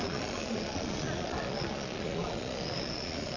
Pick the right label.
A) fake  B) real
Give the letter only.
A